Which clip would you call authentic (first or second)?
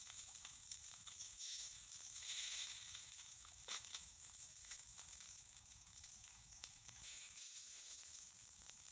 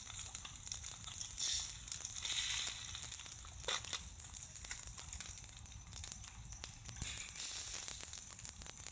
second